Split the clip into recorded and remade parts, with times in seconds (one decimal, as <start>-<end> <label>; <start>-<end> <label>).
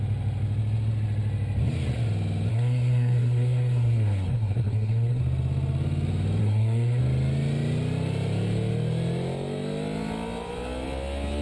0.0-2.5 recorded; 2.5-5.2 remade; 5.2-6.4 recorded; 6.4-7.0 remade; 7.0-11.4 recorded